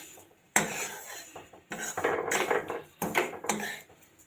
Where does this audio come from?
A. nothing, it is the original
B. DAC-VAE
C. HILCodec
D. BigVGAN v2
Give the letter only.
D